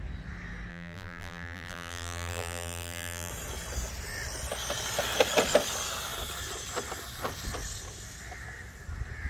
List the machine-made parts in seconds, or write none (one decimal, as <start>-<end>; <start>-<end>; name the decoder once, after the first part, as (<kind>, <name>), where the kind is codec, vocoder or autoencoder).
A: 0.7-3.3 (vocoder, BigVGAN v2)